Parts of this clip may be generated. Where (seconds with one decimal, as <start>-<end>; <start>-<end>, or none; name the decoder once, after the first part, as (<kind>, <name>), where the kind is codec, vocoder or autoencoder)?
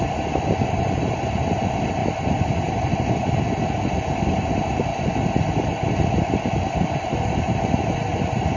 none